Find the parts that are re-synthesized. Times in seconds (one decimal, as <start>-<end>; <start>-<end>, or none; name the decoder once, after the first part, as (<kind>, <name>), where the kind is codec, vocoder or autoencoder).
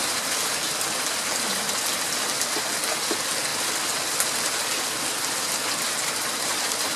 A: none